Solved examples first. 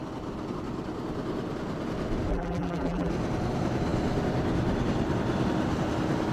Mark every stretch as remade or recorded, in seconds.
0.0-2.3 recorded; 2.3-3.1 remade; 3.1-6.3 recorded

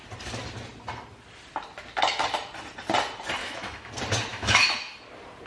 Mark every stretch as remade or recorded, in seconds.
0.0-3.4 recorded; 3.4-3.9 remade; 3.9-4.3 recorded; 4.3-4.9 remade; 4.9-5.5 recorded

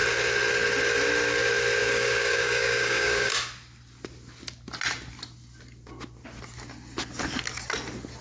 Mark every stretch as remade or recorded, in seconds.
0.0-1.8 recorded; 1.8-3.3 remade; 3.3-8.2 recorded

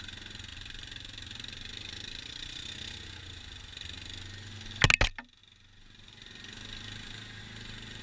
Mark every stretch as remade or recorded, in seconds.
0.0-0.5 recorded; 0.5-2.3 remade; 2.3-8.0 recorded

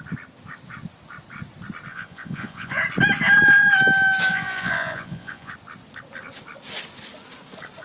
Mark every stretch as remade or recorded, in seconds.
0.0-1.9 recorded; 1.9-2.8 remade; 2.8-4.3 recorded; 4.3-5.5 remade; 5.5-7.8 recorded